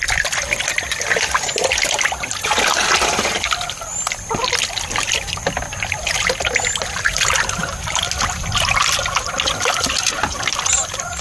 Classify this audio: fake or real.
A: real